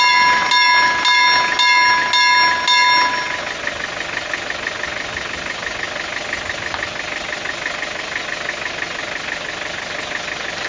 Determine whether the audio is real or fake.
real